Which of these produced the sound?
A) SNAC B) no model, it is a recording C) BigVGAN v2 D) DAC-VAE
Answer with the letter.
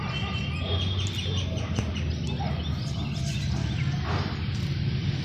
B